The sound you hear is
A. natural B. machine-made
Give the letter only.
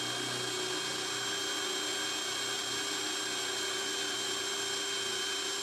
A